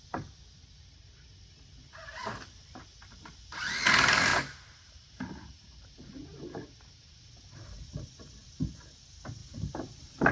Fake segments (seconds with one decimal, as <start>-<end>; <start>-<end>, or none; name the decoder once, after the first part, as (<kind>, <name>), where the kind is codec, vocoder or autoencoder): 4.3-7.6 (vocoder, BigVGAN v2); 9.4-10.3